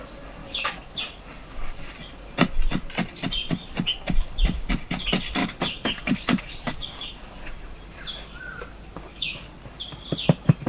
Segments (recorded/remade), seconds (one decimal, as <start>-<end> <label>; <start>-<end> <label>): 0.0-0.4 recorded; 0.4-1.0 remade; 1.0-5.4 recorded; 5.4-7.3 remade; 7.3-9.1 recorded; 9.1-9.6 remade; 9.6-10.7 recorded

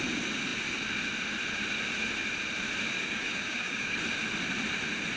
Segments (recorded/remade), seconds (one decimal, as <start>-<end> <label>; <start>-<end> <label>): 0.0-2.9 recorded; 2.9-4.0 remade; 4.0-5.2 recorded

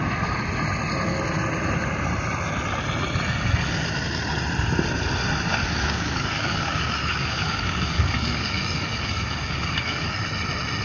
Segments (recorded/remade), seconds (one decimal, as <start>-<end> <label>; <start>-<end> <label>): 0.0-5.5 recorded; 5.5-10.2 remade; 10.2-10.8 recorded

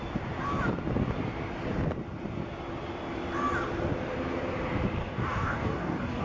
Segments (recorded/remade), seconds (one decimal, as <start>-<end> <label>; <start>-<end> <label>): 0.0-5.0 recorded; 5.0-6.2 remade

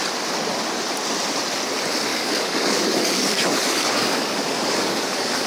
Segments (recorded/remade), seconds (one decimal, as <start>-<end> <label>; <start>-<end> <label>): 0.0-2.1 recorded; 2.1-5.5 remade